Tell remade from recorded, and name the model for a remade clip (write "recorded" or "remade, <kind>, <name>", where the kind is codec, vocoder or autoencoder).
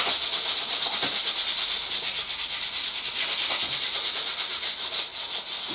recorded